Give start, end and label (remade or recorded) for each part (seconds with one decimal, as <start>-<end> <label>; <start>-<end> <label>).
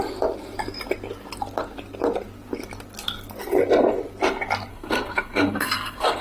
0.0-4.7 recorded; 4.7-6.2 remade